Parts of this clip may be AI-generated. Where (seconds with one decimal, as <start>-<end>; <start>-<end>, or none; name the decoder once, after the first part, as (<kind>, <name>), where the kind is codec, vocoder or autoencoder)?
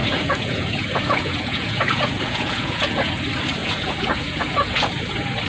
0.0-3.2 (vocoder, Vocos); 3.6-4.9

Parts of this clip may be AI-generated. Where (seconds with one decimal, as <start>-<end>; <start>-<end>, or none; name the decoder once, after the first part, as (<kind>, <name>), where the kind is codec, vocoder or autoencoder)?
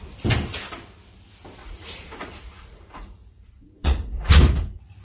1.6-4.4 (vocoder, Vocos)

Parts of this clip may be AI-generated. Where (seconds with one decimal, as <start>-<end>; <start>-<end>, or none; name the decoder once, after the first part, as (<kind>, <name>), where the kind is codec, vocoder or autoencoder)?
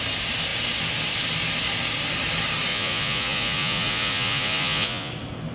2.7-5.1 (vocoder, Vocos)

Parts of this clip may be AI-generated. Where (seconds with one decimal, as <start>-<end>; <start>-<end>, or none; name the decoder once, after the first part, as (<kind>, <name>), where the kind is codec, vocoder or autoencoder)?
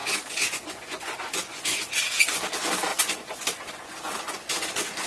0.0-2.4 (vocoder, Vocos); 2.9-5.1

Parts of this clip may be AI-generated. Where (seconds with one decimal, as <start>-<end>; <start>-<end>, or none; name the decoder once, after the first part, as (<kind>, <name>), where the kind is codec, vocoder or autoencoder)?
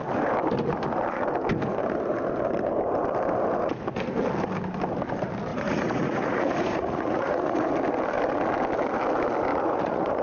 5.5-7.7 (vocoder, Vocos); 9.5-10.2